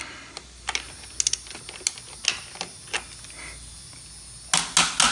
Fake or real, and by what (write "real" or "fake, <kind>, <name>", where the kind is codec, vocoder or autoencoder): real